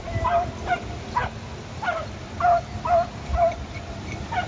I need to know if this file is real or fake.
real